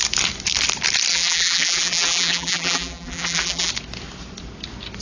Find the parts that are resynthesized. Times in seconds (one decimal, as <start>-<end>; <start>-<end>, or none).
1.1-3.7